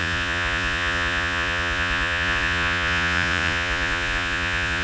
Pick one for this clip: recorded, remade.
remade